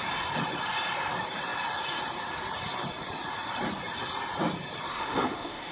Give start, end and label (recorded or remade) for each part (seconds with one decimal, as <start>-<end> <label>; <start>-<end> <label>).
0.0-4.9 recorded; 4.9-5.7 remade